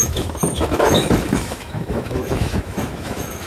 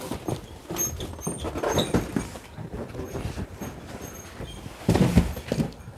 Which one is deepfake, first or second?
first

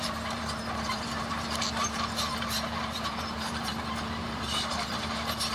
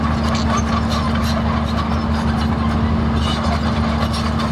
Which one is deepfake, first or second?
first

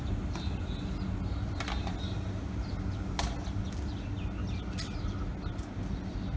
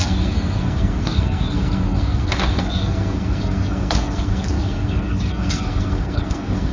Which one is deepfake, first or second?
second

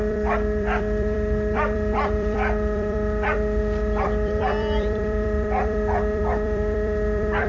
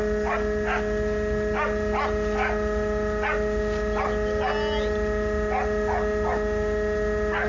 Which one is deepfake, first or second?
first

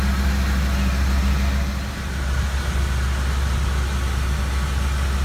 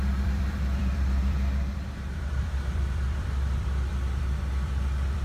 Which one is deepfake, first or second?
second